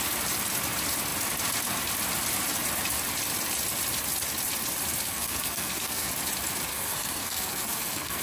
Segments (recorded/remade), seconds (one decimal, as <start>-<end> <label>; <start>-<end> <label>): 0.0-5.1 recorded; 5.1-6.1 remade; 6.1-6.7 recorded; 6.7-8.2 remade